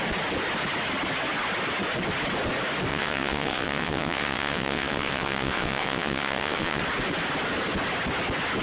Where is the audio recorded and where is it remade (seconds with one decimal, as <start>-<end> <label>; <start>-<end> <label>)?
0.0-2.9 recorded; 2.9-6.8 remade; 6.8-8.6 recorded